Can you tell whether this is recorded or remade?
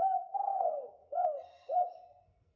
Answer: remade